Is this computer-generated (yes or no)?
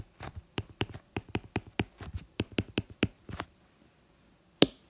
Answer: no